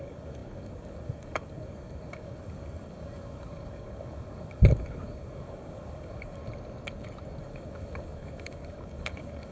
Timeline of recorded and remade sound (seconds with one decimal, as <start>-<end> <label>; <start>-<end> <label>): 0.0-6.4 remade; 6.4-7.4 recorded; 7.4-9.5 remade